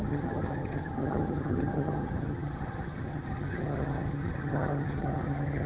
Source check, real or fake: fake